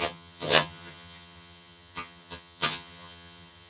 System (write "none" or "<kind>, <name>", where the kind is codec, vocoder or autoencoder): vocoder, HiFi-GAN